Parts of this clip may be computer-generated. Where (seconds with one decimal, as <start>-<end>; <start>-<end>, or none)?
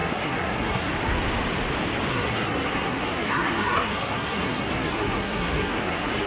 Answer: 0.0-0.9; 2.1-6.3